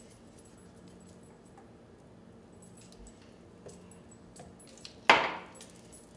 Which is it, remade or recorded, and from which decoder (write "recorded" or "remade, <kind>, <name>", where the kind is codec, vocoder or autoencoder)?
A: recorded